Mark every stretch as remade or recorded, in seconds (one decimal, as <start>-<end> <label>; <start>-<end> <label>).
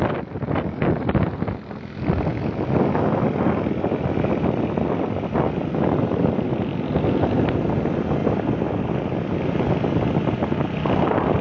0.0-11.4 recorded